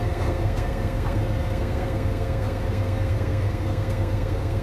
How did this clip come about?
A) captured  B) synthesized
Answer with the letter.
B